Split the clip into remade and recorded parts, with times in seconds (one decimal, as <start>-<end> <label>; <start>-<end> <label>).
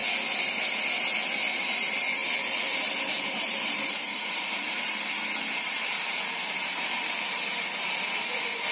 0.0-1.5 recorded; 1.5-2.2 remade; 2.2-3.1 recorded; 3.1-8.7 remade